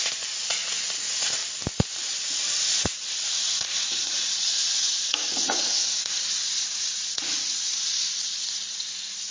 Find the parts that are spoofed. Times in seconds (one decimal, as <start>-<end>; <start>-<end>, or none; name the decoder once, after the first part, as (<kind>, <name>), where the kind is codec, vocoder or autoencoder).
0.0-1.4 (vocoder, Vocos); 1.9-9.3